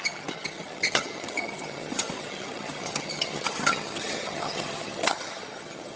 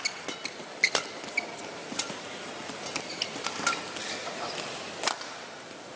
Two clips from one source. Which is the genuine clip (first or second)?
second